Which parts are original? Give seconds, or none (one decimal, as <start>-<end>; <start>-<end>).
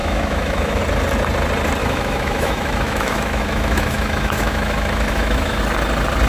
0.8-1.8; 5.6-6.3